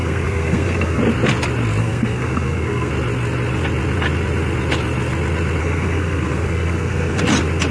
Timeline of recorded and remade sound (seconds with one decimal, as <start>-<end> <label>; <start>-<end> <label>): 0.0-1.0 remade; 1.0-1.8 recorded; 1.8-2.9 remade; 2.9-5.6 recorded; 5.6-7.2 remade; 7.2-7.7 recorded